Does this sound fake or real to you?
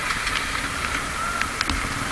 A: real